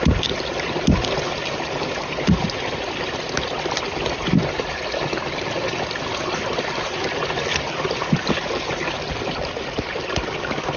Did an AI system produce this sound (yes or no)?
no